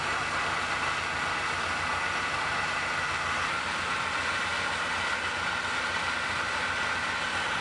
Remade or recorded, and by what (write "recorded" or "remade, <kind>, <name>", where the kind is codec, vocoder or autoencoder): recorded